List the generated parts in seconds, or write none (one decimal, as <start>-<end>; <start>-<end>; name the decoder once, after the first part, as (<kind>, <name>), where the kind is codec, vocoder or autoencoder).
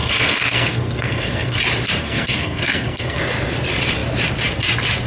0.0-1.6 (codec, SNAC); 2.0-3.2